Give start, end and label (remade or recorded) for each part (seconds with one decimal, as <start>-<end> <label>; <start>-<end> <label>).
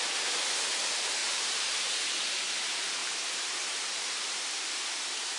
0.0-1.2 recorded; 1.2-2.2 remade; 2.2-3.0 recorded; 3.0-4.6 remade; 4.6-5.4 recorded